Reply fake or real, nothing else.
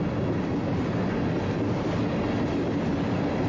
real